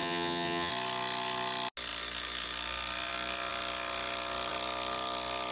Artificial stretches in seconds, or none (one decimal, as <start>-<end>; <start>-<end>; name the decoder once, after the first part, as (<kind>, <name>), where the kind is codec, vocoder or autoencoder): 0.0-0.7 (vocoder, HiFi-GAN)